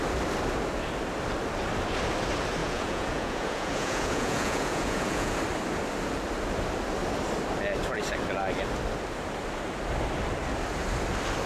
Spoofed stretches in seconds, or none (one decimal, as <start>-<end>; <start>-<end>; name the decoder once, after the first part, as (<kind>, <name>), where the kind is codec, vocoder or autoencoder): 2.6-5.4 (vocoder, Vocos)